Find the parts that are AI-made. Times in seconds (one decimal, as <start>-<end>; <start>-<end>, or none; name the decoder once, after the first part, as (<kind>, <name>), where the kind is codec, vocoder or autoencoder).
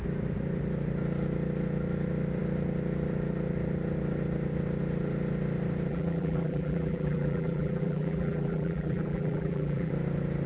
5.9-9.9 (vocoder, BigVGAN v2)